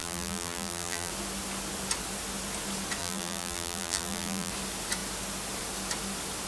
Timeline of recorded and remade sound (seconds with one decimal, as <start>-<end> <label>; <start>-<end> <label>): 0.0-1.1 remade; 1.1-3.0 recorded; 3.0-4.5 remade; 4.5-6.5 recorded